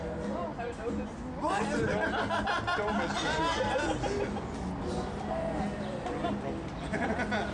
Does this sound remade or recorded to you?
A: recorded